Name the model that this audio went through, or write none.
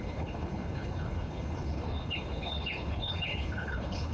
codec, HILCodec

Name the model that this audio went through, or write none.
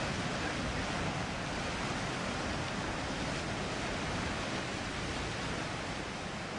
none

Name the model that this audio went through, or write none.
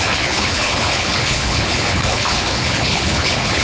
codec, HILCodec